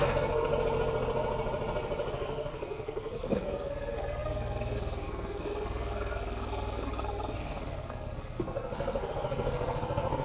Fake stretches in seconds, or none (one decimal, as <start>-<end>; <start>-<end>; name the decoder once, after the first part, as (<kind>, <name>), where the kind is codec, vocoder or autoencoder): 0.0-0.5 (codec, SNAC); 2.1-10.2